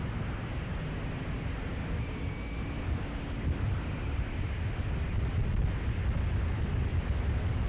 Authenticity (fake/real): real